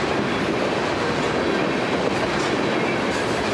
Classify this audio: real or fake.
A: real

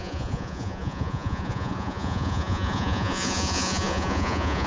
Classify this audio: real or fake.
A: fake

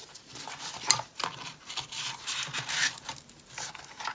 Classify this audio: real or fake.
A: real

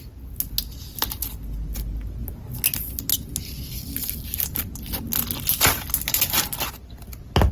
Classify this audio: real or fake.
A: real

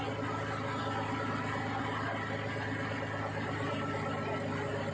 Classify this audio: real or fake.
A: real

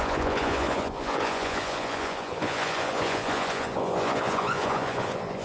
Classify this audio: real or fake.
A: fake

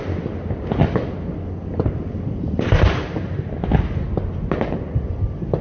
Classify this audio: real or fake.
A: real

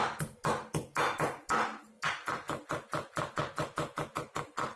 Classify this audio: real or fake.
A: real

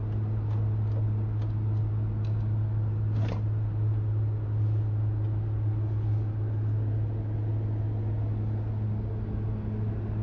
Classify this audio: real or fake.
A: real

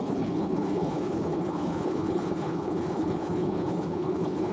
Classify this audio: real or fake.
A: fake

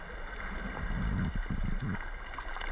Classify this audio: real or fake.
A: real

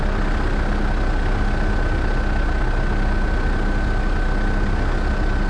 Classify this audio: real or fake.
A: real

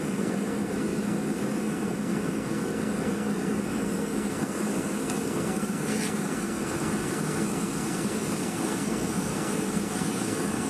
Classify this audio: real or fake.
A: fake